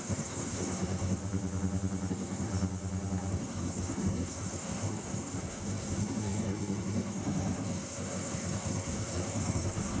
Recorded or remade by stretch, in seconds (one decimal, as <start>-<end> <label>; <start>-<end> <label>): 0.0-1.2 remade; 1.2-2.1 recorded; 2.1-2.5 remade; 2.5-3.3 recorded; 3.3-10.0 remade